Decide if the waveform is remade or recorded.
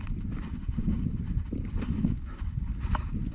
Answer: recorded